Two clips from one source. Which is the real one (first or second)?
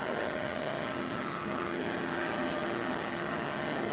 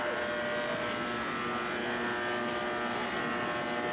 second